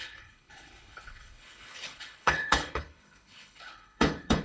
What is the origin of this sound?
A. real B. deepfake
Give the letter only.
B